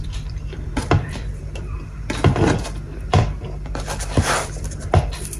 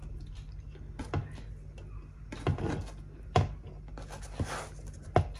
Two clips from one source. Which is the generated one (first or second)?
first